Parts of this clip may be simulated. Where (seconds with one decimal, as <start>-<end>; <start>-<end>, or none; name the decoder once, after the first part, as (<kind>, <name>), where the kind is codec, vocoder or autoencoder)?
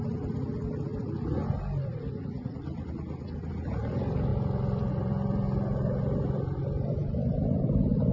none